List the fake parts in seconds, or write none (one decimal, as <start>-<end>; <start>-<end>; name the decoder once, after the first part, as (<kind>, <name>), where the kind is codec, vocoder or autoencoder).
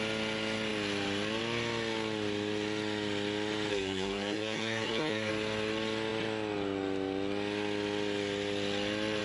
3.7-5.3 (codec, SNAC)